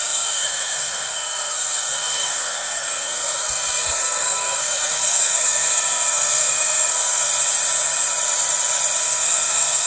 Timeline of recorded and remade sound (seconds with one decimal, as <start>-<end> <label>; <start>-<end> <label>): 0.0-7.3 remade; 7.3-9.0 recorded; 9.0-9.9 remade